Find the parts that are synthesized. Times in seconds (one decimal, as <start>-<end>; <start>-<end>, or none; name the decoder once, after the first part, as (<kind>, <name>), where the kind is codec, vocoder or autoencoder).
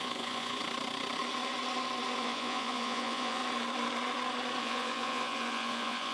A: 0.0-0.6 (vocoder, Vocos); 2.2-3.4; 4.6-6.1